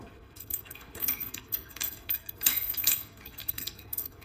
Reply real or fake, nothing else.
fake